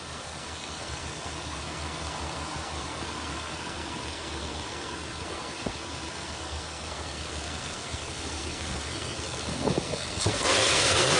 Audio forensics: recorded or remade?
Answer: remade